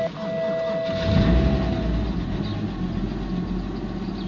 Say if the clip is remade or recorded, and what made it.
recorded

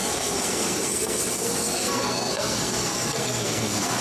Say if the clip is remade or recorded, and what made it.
remade, codec, SNAC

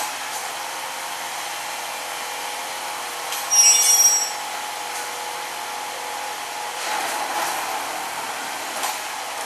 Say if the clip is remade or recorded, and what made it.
recorded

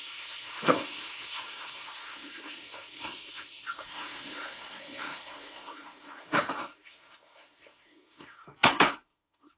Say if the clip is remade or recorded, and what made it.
remade, codec, SNAC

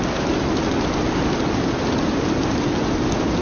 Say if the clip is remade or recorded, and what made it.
recorded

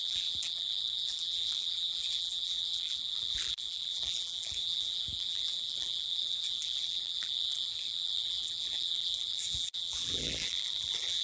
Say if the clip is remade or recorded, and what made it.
remade, vocoder, BigVGAN v2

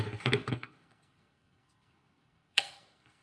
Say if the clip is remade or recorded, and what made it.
remade, codec, SNAC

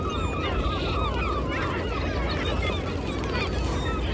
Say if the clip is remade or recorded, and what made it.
recorded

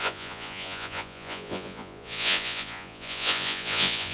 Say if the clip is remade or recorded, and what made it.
remade, vocoder, Vocos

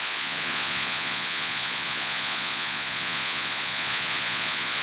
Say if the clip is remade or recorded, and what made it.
remade, vocoder, Vocos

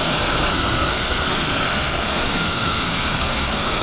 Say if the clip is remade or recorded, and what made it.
remade, codec, SNAC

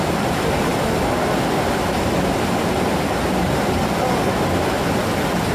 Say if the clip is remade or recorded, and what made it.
recorded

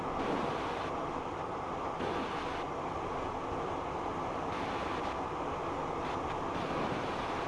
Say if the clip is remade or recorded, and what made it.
recorded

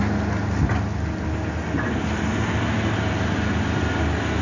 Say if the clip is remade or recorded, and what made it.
recorded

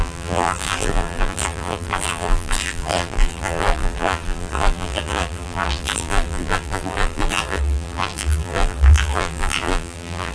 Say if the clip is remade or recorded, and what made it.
remade, vocoder, BigVGAN v2